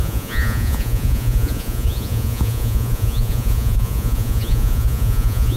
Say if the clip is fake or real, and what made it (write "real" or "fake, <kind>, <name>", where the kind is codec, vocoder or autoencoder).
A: fake, vocoder, Vocos